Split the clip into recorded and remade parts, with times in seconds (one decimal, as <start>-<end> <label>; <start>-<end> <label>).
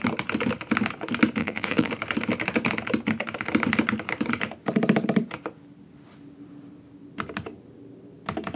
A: 0.0-1.4 recorded; 1.4-1.9 remade; 1.9-8.6 recorded